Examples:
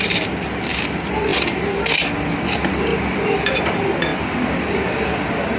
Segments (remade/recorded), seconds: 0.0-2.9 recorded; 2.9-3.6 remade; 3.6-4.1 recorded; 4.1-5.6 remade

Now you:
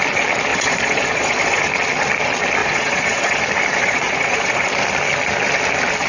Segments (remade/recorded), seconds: 0.0-0.5 recorded; 0.5-1.6 remade; 1.6-2.6 recorded; 2.6-3.4 remade; 3.4-3.8 recorded; 3.8-4.7 remade; 4.7-6.1 recorded